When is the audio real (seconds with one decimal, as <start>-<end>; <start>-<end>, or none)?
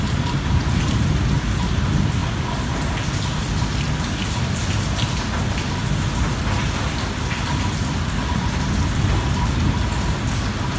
0.0-10.8